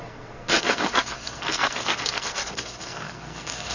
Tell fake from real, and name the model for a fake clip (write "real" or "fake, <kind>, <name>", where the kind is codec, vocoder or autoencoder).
fake, codec, SNAC